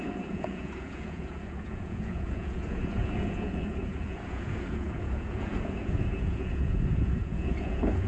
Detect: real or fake fake